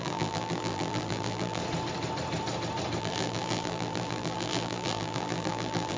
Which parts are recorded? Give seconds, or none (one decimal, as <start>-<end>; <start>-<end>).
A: 1.6-3.0